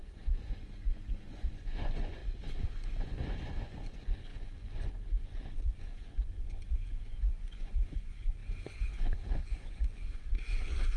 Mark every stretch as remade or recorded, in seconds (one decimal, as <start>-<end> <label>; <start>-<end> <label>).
0.0-2.2 remade; 2.2-2.7 recorded; 2.7-11.0 remade